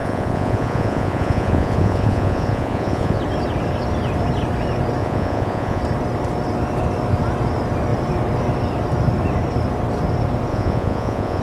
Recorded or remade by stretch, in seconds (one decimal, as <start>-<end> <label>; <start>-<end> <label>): 0.0-3.2 remade; 3.2-5.0 recorded; 5.0-5.8 remade; 5.8-10.5 recorded; 10.5-11.4 remade